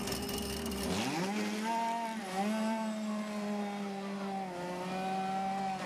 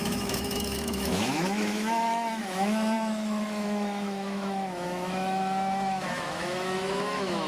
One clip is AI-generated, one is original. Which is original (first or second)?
first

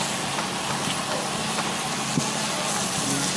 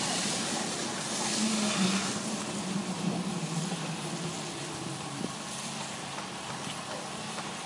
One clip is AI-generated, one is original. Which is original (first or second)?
first